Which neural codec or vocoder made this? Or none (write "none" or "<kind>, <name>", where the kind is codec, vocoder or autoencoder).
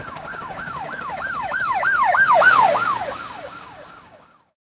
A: codec, DAC